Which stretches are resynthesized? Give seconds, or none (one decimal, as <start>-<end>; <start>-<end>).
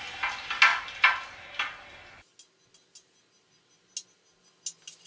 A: none